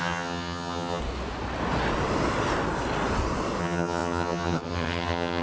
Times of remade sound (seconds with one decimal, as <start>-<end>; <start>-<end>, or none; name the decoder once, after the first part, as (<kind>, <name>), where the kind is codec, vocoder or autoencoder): 0.0-1.0 (vocoder, HiFi-GAN); 3.6-5.4